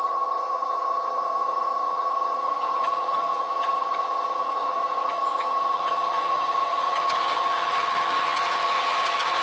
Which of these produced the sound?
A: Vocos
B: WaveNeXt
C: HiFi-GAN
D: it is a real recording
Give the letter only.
C